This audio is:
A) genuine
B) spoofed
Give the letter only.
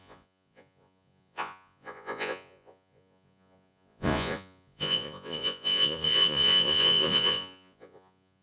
B